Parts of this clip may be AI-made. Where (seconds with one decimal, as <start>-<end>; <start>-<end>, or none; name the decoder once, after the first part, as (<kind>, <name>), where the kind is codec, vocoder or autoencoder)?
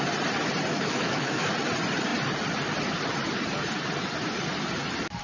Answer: 0.7-1.5 (autoencoder, DAC-VAE)